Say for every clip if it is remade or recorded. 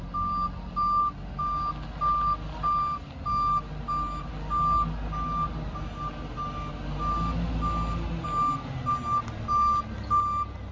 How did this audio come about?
recorded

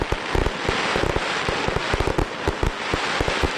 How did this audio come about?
recorded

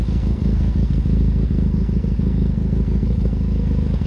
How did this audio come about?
remade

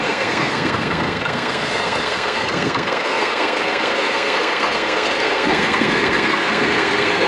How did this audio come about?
remade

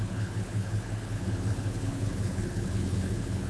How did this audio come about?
remade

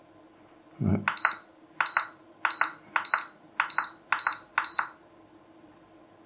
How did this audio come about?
recorded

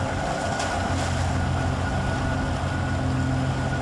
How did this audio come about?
recorded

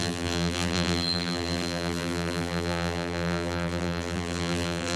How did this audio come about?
remade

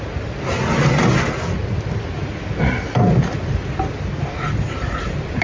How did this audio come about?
recorded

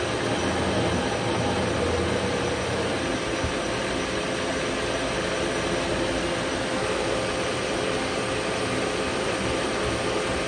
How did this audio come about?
recorded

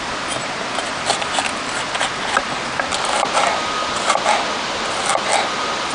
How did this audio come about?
recorded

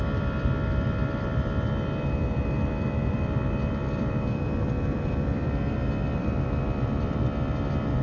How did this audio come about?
remade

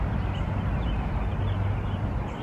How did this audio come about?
recorded